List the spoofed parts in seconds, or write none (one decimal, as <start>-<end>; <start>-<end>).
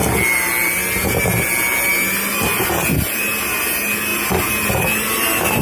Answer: none